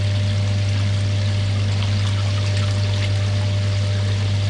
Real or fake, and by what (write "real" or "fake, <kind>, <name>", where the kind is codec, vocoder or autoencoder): real